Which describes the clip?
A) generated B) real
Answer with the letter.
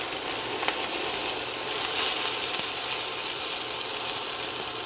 B